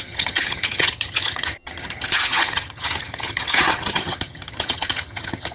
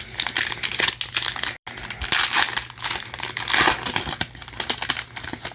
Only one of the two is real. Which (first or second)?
second